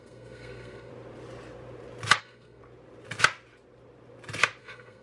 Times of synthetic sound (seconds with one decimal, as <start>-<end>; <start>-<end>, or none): 0.0-0.9; 2.2-2.6; 4.6-5.0